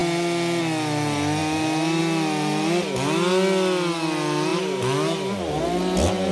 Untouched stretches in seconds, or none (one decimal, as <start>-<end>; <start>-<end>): 0.0-6.3